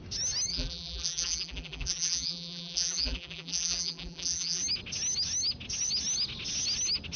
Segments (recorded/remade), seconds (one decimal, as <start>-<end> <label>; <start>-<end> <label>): 0.0-0.5 recorded; 0.5-4.6 remade; 4.6-7.2 recorded